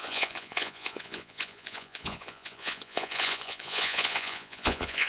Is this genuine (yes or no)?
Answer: no